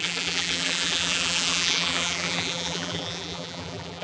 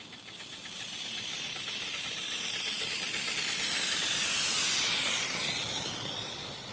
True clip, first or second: second